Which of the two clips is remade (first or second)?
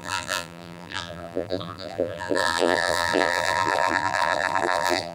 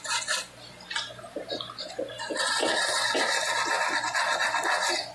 first